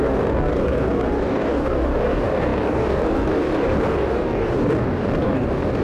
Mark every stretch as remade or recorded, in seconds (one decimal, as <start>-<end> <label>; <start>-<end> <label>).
0.0-5.8 remade